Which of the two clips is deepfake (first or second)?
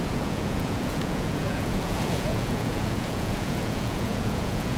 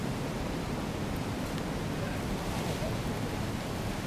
first